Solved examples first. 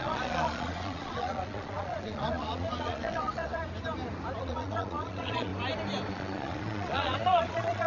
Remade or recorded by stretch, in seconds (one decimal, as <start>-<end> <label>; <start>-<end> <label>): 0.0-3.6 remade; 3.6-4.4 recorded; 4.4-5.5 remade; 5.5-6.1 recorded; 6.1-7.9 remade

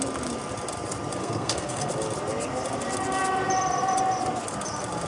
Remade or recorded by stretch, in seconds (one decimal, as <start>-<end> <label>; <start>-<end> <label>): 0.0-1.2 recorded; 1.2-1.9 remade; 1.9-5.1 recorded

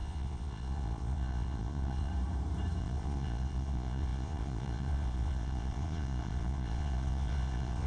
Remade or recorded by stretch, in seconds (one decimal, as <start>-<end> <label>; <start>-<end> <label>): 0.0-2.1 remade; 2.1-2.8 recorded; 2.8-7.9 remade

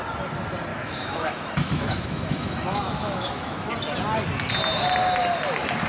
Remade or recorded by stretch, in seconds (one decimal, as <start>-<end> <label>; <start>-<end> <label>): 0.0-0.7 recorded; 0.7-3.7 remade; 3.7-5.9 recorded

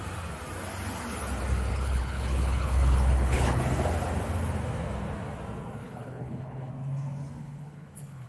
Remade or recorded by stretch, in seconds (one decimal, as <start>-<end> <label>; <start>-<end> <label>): 0.0-1.7 recorded; 1.7-3.6 remade; 3.6-5.8 recorded; 5.8-6.7 remade; 6.7-7.4 recorded; 7.4-8.3 remade